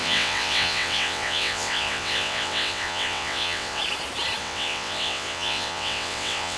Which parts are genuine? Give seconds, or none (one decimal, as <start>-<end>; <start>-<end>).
3.8-4.4